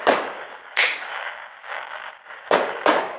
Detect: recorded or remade remade